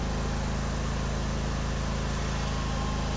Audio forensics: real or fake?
real